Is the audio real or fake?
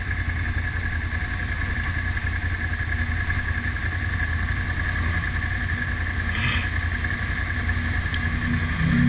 real